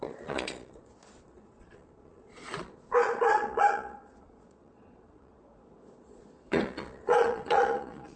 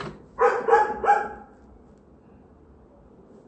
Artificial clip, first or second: first